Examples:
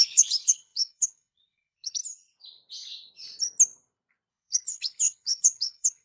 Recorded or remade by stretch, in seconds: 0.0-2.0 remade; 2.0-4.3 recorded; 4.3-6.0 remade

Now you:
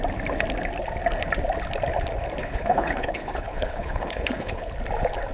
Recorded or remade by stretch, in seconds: 0.0-2.4 recorded; 2.4-4.7 remade; 4.7-5.3 recorded

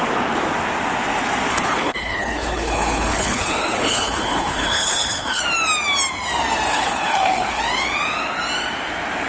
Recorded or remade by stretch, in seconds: 0.0-1.5 recorded; 1.5-5.4 remade; 5.4-6.7 recorded; 6.7-7.6 remade; 7.6-9.3 recorded

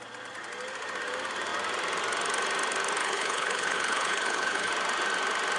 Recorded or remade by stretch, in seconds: 0.0-3.0 recorded; 3.0-4.7 remade; 4.7-5.6 recorded

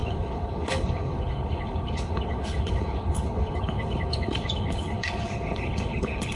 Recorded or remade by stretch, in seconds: 0.0-6.4 remade